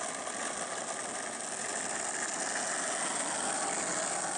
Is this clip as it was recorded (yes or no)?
yes